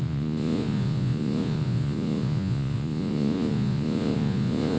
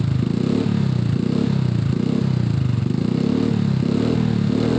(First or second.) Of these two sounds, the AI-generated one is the first